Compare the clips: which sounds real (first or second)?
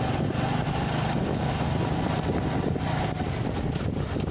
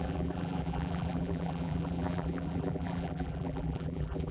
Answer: first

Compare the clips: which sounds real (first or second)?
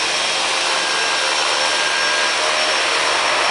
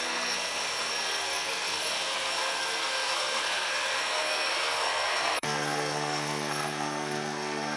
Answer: first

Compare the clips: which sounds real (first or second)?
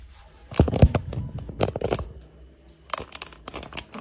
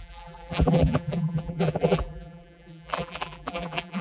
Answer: first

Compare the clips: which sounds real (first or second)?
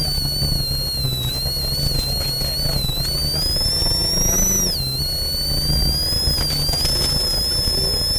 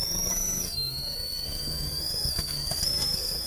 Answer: first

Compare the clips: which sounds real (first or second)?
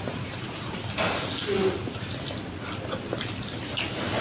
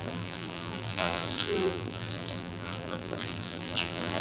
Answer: first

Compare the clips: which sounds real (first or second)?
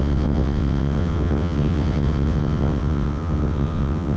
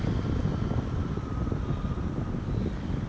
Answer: second